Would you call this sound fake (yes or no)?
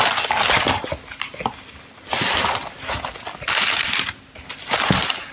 no